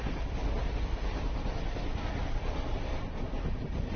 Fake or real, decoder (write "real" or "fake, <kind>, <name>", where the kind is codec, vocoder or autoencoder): real